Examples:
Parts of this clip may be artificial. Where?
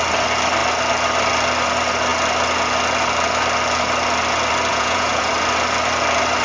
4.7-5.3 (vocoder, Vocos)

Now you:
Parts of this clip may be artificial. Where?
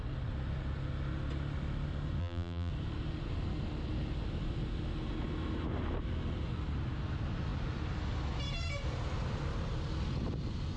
2.2-2.7 (vocoder, BigVGAN v2)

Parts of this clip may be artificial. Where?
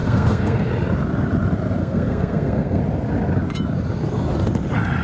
0.0-0.7 (codec, SNAC); 1.8-2.8